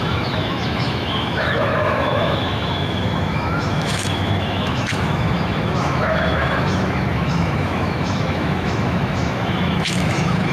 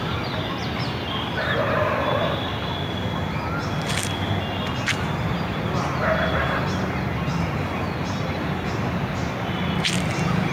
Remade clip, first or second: first